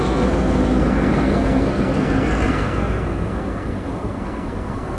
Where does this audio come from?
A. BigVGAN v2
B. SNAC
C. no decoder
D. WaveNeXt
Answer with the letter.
B